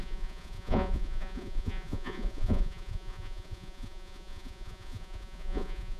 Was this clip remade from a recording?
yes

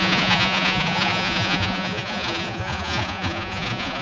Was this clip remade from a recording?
yes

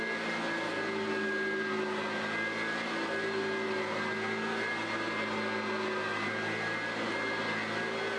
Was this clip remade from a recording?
no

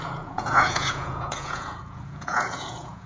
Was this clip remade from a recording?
yes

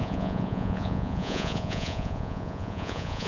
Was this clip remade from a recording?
yes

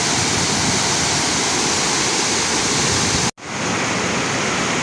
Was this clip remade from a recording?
no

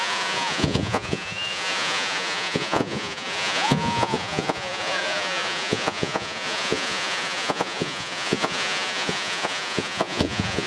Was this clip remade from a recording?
yes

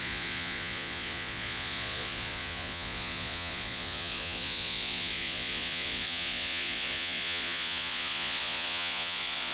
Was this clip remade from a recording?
yes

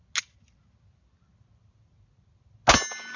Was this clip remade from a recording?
no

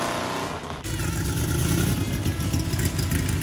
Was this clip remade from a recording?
no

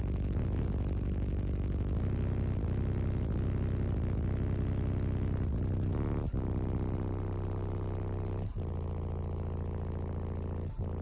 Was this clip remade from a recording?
no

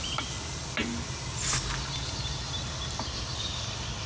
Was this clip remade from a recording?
no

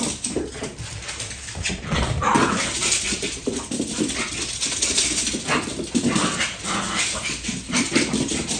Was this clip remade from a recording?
no